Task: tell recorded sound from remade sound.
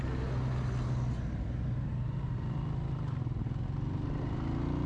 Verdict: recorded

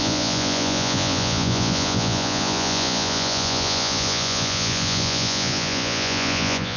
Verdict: remade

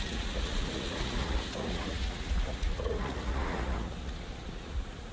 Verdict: remade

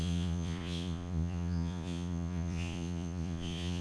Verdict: remade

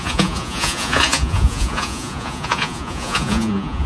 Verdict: remade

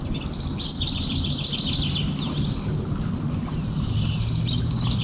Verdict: recorded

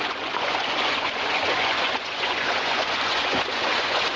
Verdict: remade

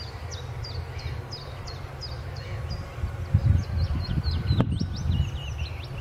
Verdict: recorded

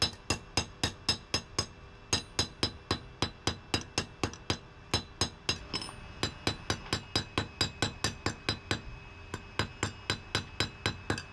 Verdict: recorded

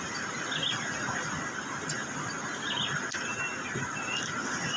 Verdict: recorded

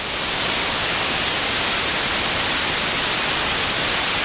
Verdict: recorded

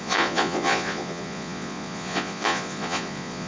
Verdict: remade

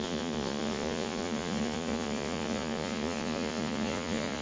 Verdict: remade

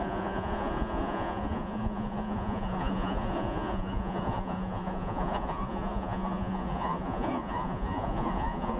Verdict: remade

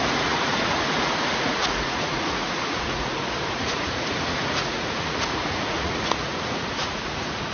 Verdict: remade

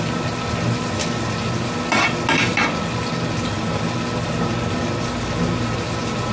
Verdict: recorded